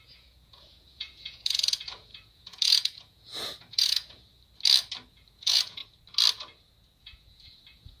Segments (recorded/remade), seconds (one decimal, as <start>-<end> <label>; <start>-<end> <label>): 0.0-4.3 remade; 4.3-5.1 recorded; 5.1-5.8 remade; 5.8-7.0 recorded; 7.0-8.0 remade

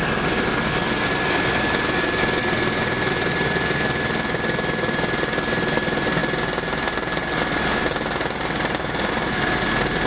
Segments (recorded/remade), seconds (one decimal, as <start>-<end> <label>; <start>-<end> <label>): 0.0-10.1 recorded

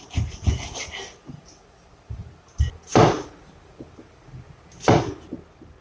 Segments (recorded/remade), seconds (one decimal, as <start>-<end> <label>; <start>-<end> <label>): 0.0-5.8 recorded